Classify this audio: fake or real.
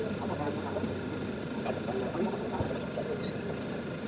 real